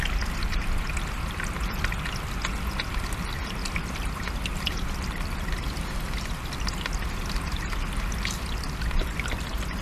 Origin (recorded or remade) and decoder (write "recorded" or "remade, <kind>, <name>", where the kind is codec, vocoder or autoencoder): recorded